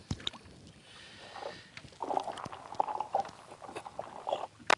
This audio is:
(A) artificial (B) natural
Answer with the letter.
B